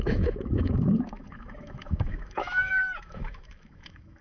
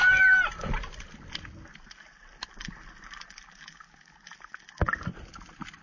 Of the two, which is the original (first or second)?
second